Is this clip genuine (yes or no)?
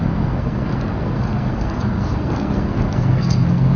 no